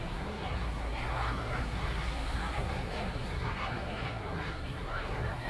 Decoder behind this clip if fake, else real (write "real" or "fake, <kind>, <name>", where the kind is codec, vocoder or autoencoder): fake, codec, SNAC